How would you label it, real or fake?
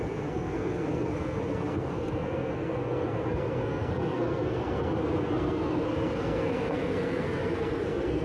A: fake